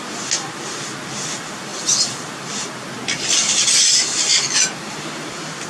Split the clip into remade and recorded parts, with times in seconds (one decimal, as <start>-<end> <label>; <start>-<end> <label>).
0.0-5.7 recorded